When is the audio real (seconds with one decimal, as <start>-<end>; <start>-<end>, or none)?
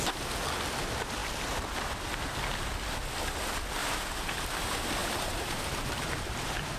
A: 0.0-3.8; 4.6-5.0